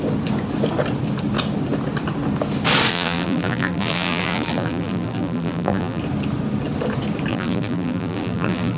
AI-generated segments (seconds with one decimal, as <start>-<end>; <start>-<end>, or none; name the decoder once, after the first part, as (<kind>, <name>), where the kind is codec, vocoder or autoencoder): 2.9-6.0 (vocoder, BigVGAN v2); 7.3-8.8